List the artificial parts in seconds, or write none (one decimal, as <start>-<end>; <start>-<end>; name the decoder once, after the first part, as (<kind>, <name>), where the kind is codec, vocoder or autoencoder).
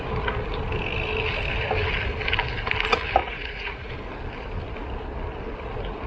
3.2-3.9 (vocoder, Vocos)